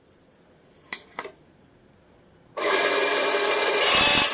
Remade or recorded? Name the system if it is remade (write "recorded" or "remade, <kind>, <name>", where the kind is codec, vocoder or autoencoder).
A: remade, vocoder, BigVGAN v2